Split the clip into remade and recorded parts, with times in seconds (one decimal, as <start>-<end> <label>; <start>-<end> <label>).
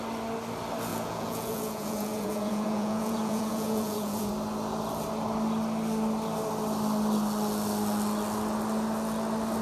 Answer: 0.0-0.9 recorded; 0.9-4.3 remade; 4.3-9.6 recorded